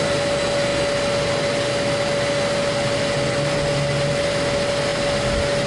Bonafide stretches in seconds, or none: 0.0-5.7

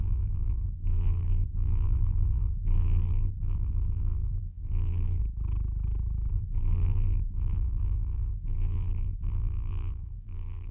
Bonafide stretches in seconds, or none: 5.2-6.3

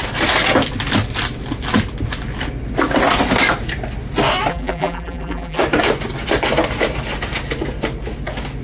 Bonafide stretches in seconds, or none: 0.0-4.5; 5.6-8.6